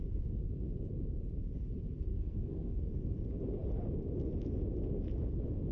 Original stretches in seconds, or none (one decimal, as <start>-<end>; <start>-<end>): 0.0-2.1; 2.9-5.7